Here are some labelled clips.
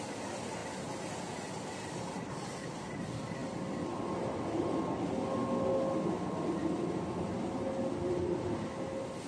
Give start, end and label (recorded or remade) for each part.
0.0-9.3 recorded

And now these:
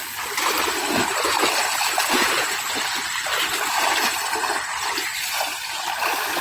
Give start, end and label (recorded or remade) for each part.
0.0-2.7 recorded; 2.7-6.4 remade

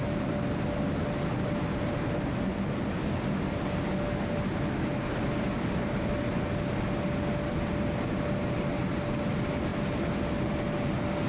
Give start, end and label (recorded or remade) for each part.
0.0-11.3 recorded

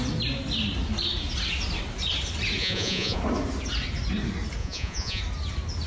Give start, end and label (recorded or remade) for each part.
0.0-2.6 recorded; 2.6-3.2 remade; 3.2-4.6 recorded; 4.6-5.2 remade; 5.2-5.9 recorded